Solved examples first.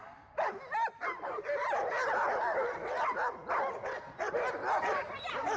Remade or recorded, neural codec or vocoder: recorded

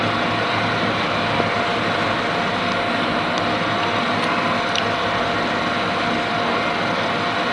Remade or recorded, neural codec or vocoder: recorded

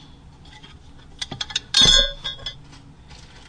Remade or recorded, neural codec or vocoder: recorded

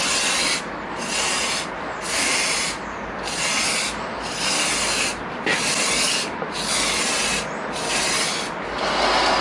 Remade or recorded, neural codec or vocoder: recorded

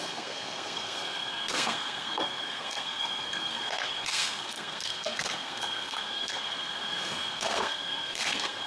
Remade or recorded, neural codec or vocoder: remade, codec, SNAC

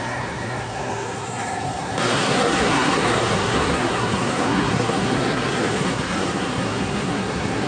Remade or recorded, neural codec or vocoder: remade, codec, SNAC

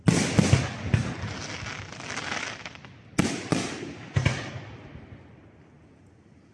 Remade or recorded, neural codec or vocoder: recorded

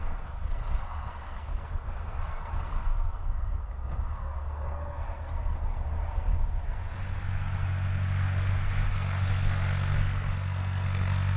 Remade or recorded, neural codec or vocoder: remade, codec, SNAC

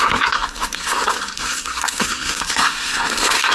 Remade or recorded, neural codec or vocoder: remade, codec, SNAC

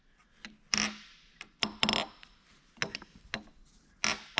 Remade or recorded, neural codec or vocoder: recorded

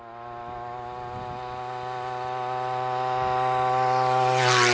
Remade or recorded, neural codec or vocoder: recorded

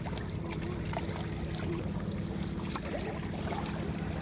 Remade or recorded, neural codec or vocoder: recorded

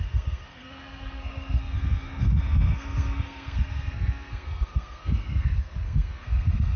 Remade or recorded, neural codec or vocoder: remade, codec, SNAC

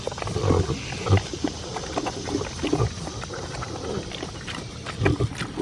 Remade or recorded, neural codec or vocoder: recorded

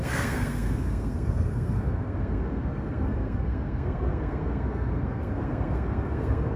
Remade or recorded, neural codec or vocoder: remade, codec, SNAC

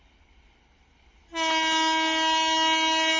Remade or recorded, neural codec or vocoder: recorded